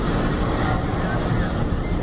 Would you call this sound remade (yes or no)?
no